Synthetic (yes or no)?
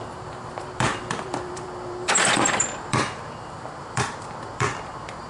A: yes